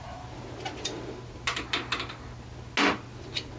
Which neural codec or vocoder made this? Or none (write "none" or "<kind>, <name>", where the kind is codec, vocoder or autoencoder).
none